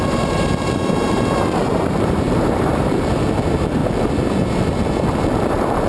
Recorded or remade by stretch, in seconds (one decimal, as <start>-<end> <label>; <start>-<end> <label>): 0.0-3.8 remade; 3.8-5.9 recorded